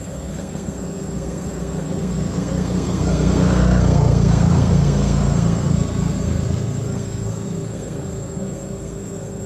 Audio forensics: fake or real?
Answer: fake